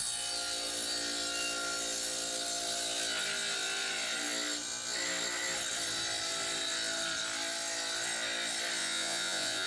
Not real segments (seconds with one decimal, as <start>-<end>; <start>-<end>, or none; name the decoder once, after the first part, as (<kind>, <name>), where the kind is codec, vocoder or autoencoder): 8.8-9.7 (vocoder, Vocos)